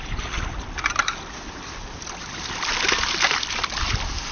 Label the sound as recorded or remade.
recorded